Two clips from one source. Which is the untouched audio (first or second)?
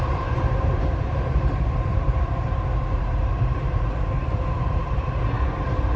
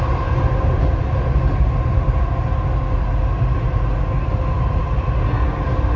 second